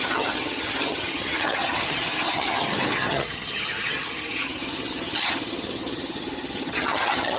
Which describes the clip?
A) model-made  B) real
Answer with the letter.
A